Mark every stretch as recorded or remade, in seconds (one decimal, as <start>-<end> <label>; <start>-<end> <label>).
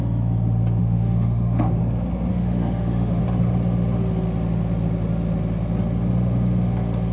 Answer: 0.0-0.8 recorded; 0.8-1.8 remade; 1.8-2.3 recorded; 2.3-3.2 remade; 3.2-7.1 recorded